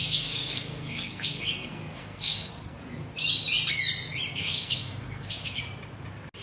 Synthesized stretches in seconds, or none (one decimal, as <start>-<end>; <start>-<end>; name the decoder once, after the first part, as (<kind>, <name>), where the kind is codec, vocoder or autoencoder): 0.0-2.8 (codec, SNAC); 4.3-5.6